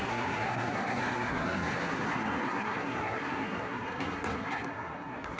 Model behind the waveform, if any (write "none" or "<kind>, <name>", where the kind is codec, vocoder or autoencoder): codec, SNAC